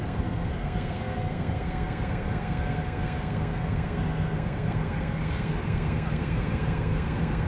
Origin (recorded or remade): remade